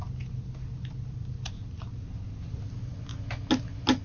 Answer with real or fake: real